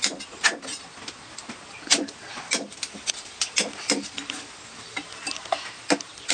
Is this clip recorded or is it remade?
recorded